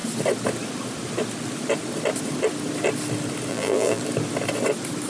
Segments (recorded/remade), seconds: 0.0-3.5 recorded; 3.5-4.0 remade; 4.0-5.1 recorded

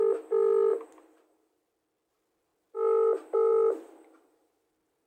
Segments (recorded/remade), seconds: 0.0-5.1 recorded

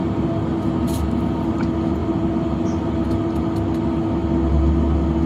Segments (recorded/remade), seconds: 0.0-5.3 recorded

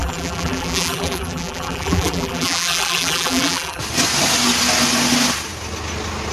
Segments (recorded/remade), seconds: 0.0-3.8 remade; 3.8-6.3 recorded

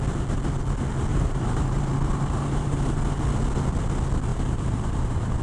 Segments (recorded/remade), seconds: 0.0-1.1 recorded; 1.1-3.0 remade; 3.0-4.3 recorded; 4.3-5.4 remade

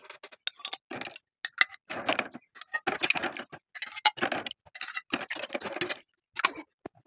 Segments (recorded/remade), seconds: 0.0-7.1 recorded

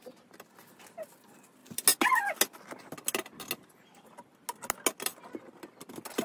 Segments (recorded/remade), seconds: 0.0-6.2 recorded

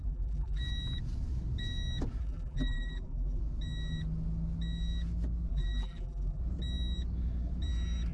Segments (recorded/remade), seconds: 0.0-0.6 remade; 0.6-2.2 recorded; 2.2-3.4 remade; 3.4-5.5 recorded; 5.5-6.4 remade; 6.4-8.1 recorded